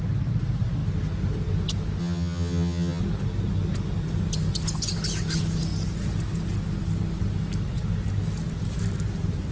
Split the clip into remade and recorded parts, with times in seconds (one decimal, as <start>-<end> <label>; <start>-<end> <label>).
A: 0.0-2.0 recorded; 2.0-3.0 remade; 3.0-9.5 recorded

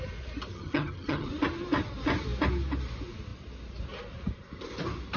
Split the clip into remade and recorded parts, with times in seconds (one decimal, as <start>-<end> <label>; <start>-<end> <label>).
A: 0.0-0.5 recorded; 0.5-1.3 remade; 1.3-5.2 recorded